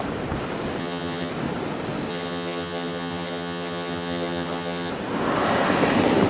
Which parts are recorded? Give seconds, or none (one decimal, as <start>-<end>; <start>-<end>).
0.0-0.8; 1.3-2.1; 4.9-6.3